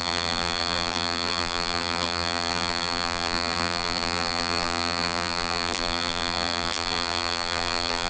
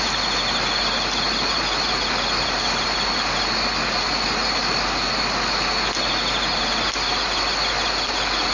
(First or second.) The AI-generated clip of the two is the first